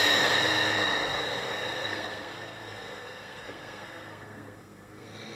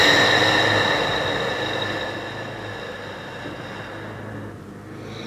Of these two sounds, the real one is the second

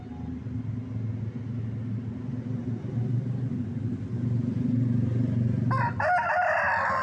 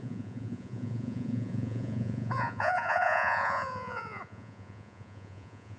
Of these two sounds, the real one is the first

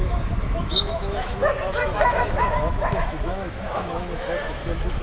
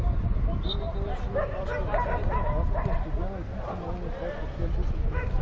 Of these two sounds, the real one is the second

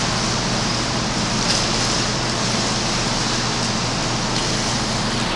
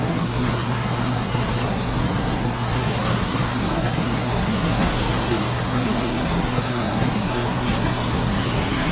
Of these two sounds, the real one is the first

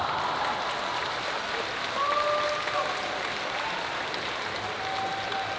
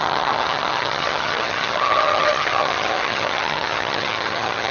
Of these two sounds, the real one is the first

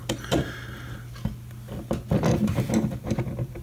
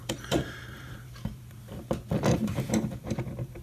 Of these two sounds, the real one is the first